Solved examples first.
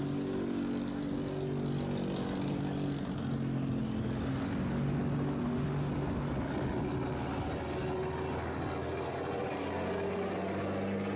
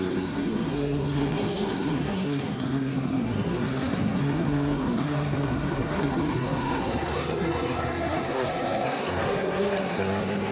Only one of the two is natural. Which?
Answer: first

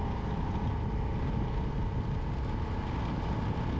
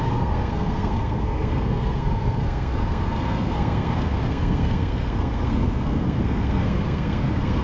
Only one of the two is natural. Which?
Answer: first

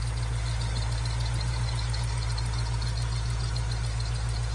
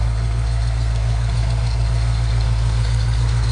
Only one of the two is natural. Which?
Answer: first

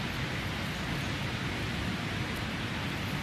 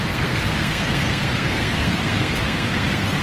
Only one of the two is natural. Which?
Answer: first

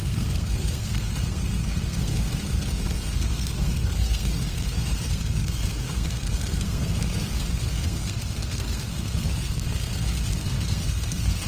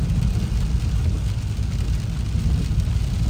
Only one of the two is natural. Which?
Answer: second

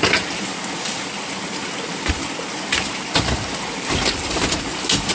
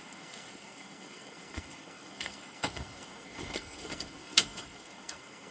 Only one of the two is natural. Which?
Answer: first